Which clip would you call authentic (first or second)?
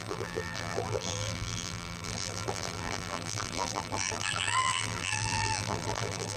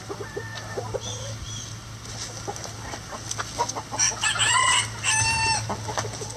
second